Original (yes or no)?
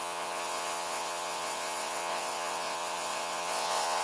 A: no